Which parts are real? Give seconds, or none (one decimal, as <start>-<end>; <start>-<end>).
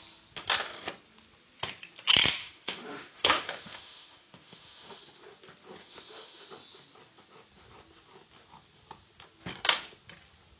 0.0-2.4; 5.0-5.8; 6.5-10.6